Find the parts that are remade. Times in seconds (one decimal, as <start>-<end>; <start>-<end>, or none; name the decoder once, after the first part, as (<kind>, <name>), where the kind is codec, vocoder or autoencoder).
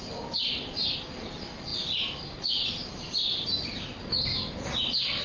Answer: none